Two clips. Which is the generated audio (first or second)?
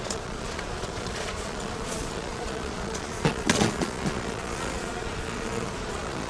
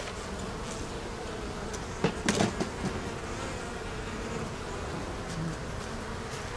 first